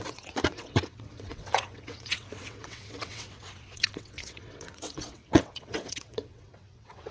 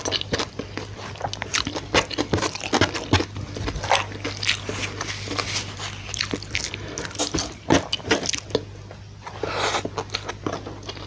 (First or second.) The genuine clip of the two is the second